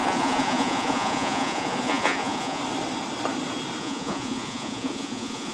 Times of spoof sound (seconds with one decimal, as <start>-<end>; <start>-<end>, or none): 0.0-2.6; 3.8-5.5